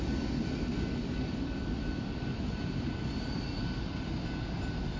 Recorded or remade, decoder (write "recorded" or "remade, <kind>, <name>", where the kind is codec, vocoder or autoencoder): recorded